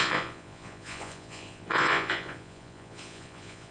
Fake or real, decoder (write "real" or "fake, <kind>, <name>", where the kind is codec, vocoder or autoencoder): fake, vocoder, Vocos